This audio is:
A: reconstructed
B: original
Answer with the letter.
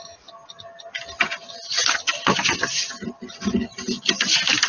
B